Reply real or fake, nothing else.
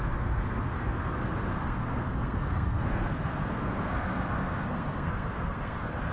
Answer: fake